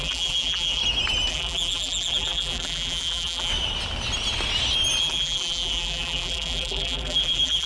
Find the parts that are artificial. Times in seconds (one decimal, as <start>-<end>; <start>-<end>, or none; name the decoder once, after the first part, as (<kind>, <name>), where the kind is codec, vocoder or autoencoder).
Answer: 0.0-0.8 (vocoder, BigVGAN v2); 1.3-3.5; 5.0-7.7